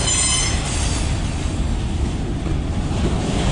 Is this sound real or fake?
real